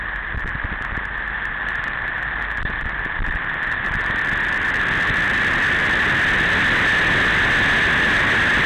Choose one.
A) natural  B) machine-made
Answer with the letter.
A